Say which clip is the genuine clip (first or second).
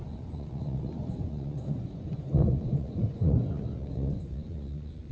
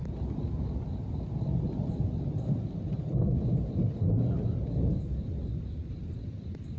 second